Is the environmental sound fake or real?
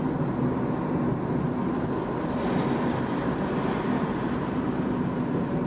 real